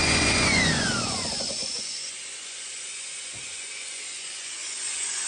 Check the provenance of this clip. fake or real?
fake